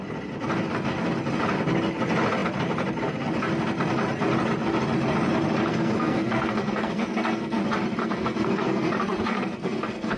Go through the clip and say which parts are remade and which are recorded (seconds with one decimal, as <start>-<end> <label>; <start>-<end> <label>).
0.0-5.7 recorded; 5.7-7.6 remade; 7.6-8.0 recorded; 8.0-10.2 remade